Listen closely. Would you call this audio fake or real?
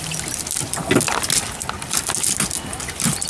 real